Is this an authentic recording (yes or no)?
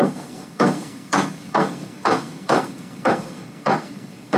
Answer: no